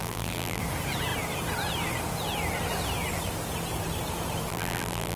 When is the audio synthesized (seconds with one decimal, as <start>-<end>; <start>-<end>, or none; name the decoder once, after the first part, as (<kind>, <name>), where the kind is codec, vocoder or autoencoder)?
0.0-0.6 (vocoder, BigVGAN v2); 4.5-5.2